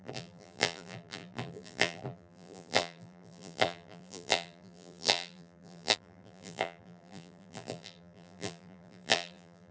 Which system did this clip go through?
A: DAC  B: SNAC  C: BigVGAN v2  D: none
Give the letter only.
C